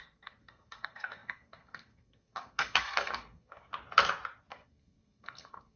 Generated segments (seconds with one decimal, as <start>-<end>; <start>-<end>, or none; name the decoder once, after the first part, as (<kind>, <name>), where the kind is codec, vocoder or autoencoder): 0.0-3.7 (codec, SNAC); 4.5-5.8